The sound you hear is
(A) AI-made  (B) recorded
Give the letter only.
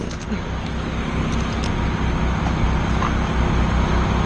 B